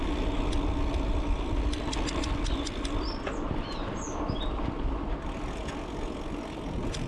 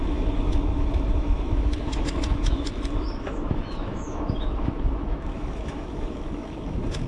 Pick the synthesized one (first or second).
second